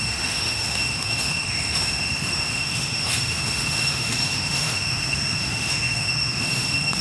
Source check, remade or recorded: remade